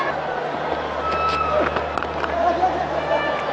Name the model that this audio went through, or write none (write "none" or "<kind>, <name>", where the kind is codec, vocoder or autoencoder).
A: none